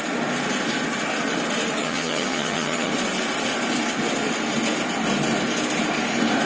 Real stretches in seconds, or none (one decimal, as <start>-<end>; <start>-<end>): 0.0-1.8; 2.9-6.5